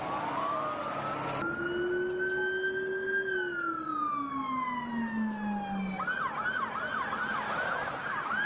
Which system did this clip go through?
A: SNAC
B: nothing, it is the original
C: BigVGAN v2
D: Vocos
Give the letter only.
B